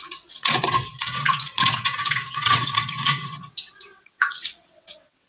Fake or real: fake